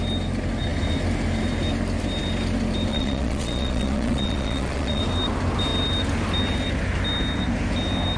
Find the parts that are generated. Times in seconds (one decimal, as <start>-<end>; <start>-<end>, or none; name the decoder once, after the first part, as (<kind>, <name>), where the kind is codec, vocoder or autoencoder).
2.9-5.0 (vocoder, Vocos)